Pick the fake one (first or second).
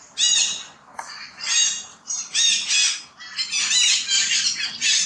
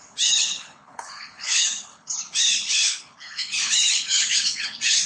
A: second